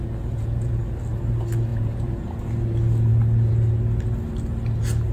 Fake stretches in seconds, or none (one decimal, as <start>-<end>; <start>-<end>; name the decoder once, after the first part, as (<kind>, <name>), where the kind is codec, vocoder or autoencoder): 0.0-0.8 (vocoder, Vocos); 1.7-2.4